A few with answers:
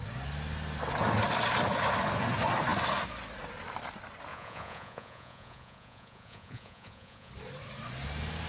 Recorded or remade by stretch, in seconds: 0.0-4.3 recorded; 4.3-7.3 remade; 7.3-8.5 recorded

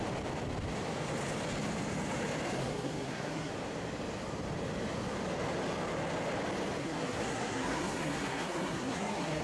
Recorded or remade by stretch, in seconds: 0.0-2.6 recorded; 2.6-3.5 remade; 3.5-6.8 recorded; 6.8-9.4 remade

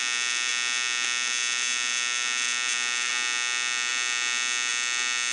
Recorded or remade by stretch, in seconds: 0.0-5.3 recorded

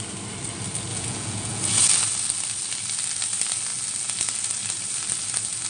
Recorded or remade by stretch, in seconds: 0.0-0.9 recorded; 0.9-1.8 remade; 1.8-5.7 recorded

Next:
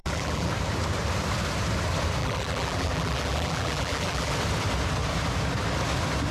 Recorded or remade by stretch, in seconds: 0.0-0.5 remade; 0.5-2.2 recorded; 2.2-4.3 remade; 4.3-6.3 recorded

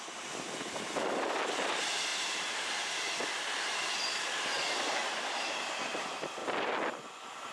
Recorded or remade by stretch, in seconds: 0.0-7.5 recorded